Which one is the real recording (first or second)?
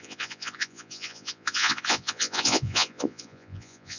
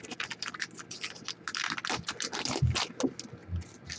second